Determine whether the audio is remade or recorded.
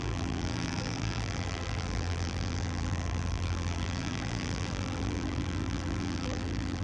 remade